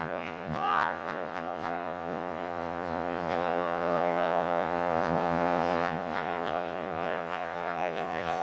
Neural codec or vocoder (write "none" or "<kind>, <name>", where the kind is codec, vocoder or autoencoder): vocoder, Vocos